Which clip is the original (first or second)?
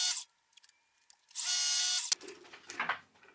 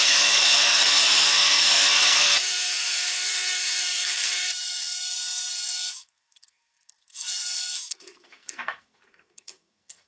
first